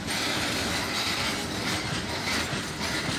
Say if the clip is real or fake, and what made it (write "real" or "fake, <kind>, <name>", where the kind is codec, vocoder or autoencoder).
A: real